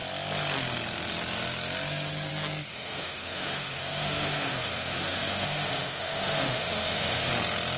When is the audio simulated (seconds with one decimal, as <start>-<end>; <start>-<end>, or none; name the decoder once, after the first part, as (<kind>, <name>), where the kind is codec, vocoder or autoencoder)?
2.7-7.3 (autoencoder, DAC-VAE)